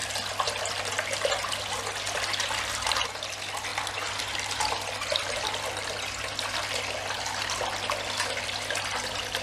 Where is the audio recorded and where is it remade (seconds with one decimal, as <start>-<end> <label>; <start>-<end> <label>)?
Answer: 0.0-9.4 recorded